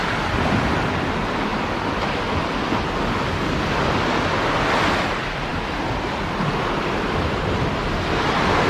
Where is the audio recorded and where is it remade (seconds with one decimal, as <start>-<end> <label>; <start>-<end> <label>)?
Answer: 0.0-5.5 recorded; 5.5-7.3 remade; 7.3-8.7 recorded